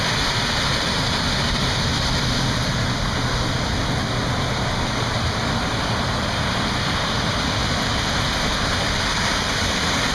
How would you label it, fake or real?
real